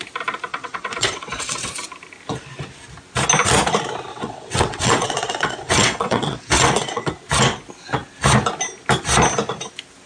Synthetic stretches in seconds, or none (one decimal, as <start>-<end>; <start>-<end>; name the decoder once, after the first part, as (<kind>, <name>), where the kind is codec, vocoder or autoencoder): 0.5-1.7 (vocoder, WaveNeXt); 4.1-7.1